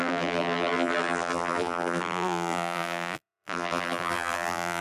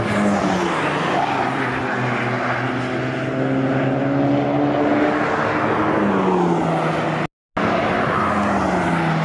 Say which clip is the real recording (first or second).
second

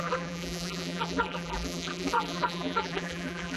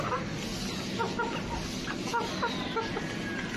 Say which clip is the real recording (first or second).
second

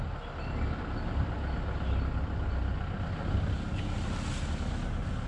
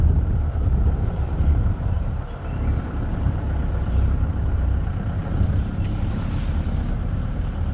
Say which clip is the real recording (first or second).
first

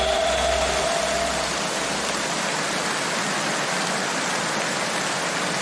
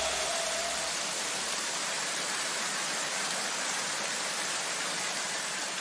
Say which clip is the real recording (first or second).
first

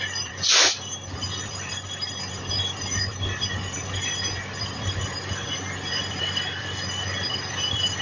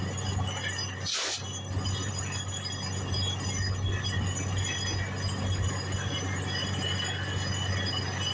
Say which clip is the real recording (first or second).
second